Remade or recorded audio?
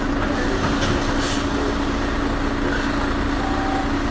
recorded